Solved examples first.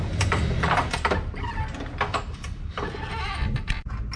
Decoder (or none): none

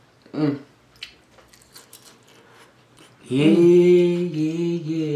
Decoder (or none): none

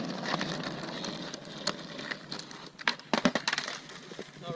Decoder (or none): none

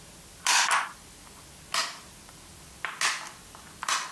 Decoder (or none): none